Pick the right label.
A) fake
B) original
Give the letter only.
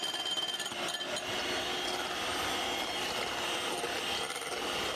B